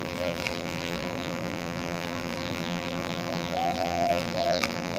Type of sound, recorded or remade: remade